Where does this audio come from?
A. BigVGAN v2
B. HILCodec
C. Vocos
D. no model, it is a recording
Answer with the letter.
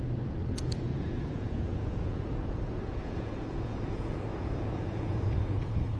C